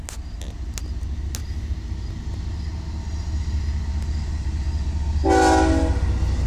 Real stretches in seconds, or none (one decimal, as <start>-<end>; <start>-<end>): 0.0-6.5